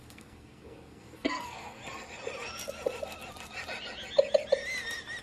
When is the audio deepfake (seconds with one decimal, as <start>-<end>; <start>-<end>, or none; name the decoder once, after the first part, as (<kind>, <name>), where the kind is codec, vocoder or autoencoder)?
0.0-1.8 (codec, SNAC)